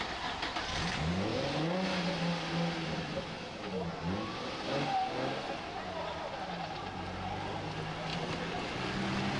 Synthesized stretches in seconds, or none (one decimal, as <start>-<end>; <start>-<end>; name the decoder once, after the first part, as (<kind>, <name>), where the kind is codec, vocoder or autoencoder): 8.1-8.8 (vocoder, BigVGAN v2)